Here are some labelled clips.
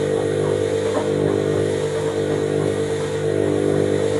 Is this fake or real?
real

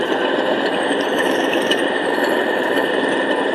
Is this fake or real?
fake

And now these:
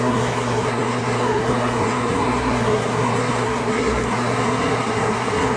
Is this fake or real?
fake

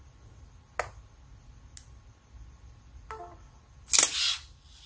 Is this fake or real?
real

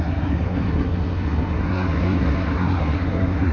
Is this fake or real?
fake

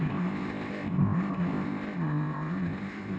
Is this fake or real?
fake